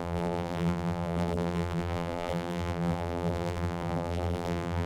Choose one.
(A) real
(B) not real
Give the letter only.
B